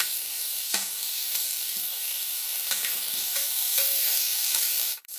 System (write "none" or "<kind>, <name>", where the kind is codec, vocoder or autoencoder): codec, DAC